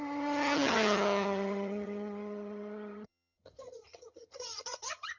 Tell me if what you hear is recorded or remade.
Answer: remade